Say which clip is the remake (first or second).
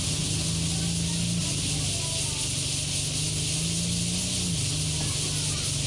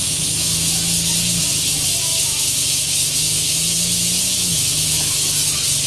second